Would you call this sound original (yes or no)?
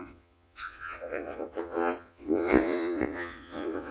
no